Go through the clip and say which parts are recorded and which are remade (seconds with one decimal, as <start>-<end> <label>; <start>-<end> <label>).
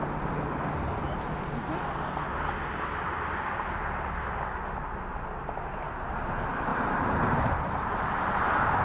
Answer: 0.0-8.8 recorded